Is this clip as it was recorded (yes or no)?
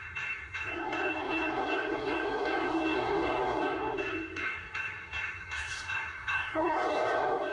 no